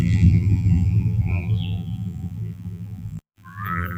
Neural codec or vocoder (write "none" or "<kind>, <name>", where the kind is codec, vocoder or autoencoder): vocoder, BigVGAN v2